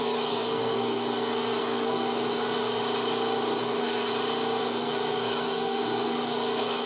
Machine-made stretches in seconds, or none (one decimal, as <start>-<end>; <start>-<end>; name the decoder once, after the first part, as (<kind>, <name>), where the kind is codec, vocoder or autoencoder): 0.0-2.8 (codec, SNAC); 3.6-4.1; 4.6-6.9